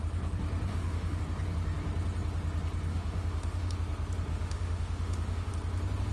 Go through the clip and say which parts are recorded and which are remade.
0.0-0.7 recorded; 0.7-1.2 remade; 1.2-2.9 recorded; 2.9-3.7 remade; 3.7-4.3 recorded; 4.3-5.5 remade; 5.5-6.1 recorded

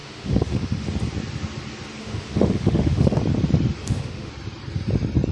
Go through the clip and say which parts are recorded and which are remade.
0.0-0.9 remade; 0.9-2.0 recorded; 2.0-3.2 remade; 3.2-3.8 recorded; 3.8-4.3 remade; 4.3-5.3 recorded

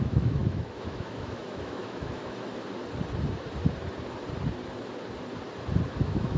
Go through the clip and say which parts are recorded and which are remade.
0.0-2.2 remade; 2.2-6.0 recorded; 6.0-6.4 remade

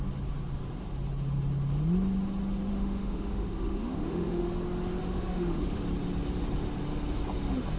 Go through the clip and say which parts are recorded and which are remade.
0.0-2.7 recorded; 2.7-4.5 remade; 4.5-5.0 recorded; 5.0-5.8 remade; 5.8-7.8 recorded

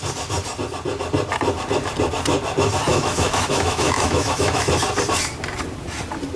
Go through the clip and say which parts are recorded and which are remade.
0.0-2.9 recorded; 2.9-4.7 remade; 4.7-6.4 recorded

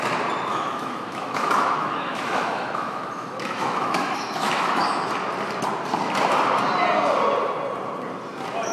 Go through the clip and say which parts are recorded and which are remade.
0.0-0.5 recorded; 0.5-5.1 remade; 5.1-8.7 recorded

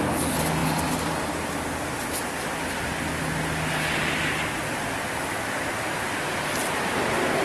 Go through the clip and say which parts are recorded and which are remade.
0.0-5.3 recorded; 5.3-6.0 remade; 6.0-7.4 recorded